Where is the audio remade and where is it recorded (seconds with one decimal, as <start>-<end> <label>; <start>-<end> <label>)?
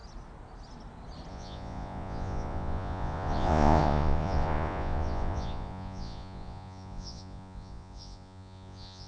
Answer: 0.0-1.3 recorded; 1.3-9.1 remade